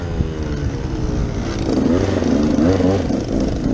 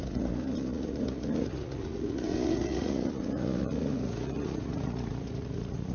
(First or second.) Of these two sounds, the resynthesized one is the second